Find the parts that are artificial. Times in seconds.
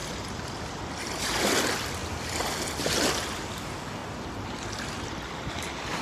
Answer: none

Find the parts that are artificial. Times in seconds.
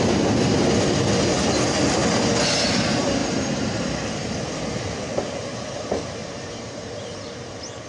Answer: 6.2-7.5 (vocoder, BigVGAN v2)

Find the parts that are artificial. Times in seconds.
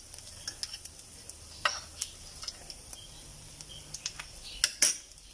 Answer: none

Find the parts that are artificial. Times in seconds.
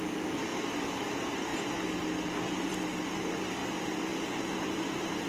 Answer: 0.0-0.5 (vocoder, BigVGAN v2); 1.0-1.5; 3.2-3.6; 4.5-5.3